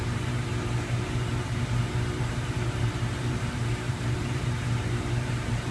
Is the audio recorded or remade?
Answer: remade